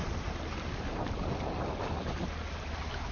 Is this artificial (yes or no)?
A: no